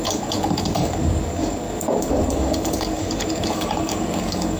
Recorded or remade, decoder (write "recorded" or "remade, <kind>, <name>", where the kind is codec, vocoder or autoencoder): remade, codec, DAC